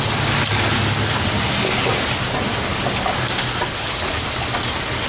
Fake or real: real